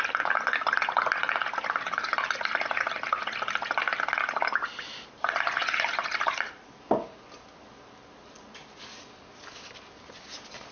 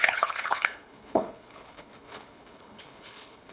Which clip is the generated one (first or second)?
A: second